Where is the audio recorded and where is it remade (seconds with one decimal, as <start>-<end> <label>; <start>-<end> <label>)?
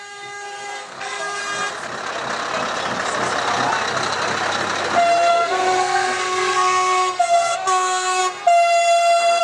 0.0-1.4 remade; 1.4-5.3 recorded; 5.3-8.2 remade; 8.2-9.4 recorded